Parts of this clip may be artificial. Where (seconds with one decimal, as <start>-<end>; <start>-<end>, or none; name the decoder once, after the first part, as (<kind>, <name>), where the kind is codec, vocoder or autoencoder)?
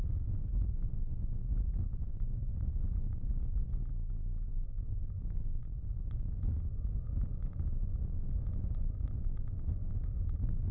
0.0-3.8 (vocoder, Vocos); 4.5-10.7